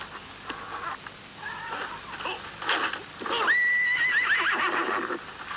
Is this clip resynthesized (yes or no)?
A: no